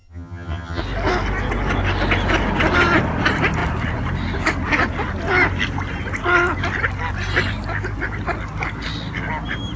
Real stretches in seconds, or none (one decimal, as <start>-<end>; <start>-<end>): 0.8-9.8